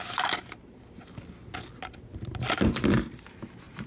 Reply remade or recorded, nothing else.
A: recorded